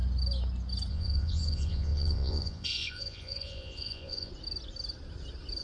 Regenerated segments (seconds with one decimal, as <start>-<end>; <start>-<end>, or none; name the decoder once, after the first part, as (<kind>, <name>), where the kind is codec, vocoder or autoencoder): 0.9-4.3 (vocoder, Vocos)